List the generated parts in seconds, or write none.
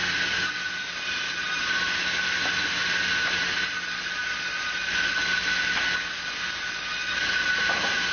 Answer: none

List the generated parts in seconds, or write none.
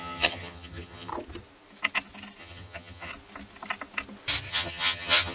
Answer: 0.0-1.1 (vocoder, HiFi-GAN); 2.4-3.1; 4.5-5.3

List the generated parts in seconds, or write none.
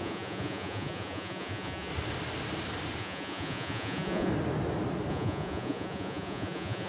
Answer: 0.0-1.9 (vocoder, Vocos); 3.0-4.3; 5.1-6.9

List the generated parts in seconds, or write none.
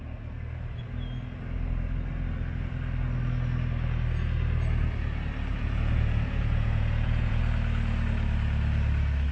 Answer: 5.5-7.4 (vocoder, Vocos)